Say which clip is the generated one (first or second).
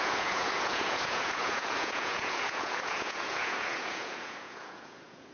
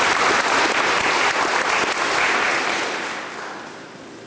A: first